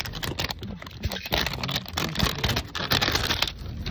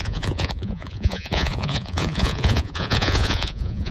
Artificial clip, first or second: second